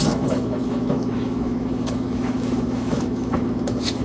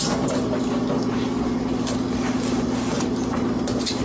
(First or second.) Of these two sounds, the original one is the second